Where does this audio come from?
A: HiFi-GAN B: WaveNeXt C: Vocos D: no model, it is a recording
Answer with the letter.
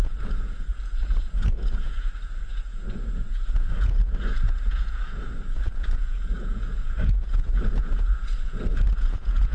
C